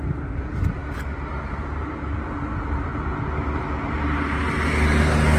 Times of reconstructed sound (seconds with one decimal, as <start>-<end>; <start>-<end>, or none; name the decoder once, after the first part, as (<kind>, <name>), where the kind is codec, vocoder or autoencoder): none